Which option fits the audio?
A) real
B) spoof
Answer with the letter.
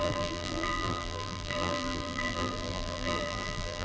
B